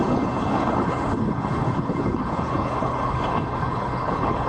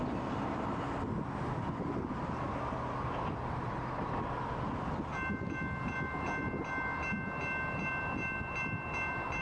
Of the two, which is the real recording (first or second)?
second